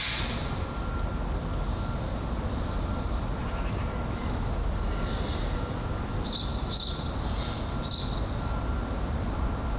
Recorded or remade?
recorded